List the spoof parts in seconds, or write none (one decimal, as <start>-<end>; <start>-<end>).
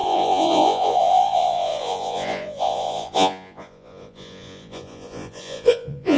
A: 0.0-6.2